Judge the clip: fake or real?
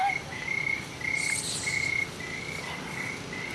real